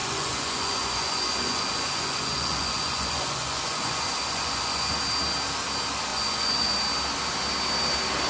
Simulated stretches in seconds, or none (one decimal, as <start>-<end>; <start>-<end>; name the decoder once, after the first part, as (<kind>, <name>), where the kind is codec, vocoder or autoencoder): 0.0-5.0 (vocoder, Vocos); 6.1-6.7

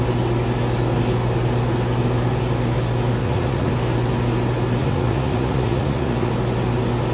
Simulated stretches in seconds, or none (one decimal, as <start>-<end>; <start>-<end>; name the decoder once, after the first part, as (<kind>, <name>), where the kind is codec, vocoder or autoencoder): 3.2-3.7 (vocoder, Vocos); 4.8-6.3

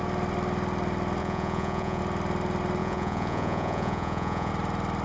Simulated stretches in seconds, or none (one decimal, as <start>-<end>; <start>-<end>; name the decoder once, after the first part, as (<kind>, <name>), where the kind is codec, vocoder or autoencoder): 1.2-2.0 (vocoder, Vocos); 2.8-4.5

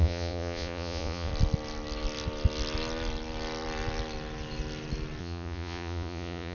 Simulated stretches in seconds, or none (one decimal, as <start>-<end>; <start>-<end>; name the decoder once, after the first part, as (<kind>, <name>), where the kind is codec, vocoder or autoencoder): 0.0-1.3 (vocoder, Vocos); 5.2-6.5

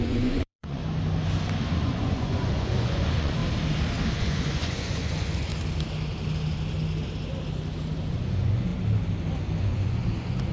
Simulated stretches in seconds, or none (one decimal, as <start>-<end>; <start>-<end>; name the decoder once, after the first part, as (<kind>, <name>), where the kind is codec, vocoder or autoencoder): 0.0-0.8 (vocoder, Vocos); 1.7-3.4; 4.1-5.5; 8.1-8.7; 9.6-10.5

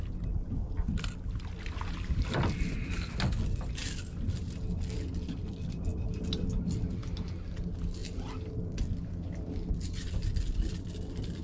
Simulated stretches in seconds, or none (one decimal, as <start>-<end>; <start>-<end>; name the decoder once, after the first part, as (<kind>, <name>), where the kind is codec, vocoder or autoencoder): none

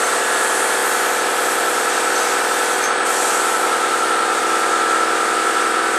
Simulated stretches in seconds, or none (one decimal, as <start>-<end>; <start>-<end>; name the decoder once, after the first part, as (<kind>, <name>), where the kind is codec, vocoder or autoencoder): none